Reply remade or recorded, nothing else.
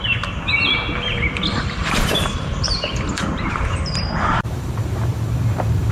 remade